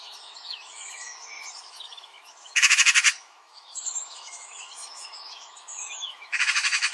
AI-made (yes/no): yes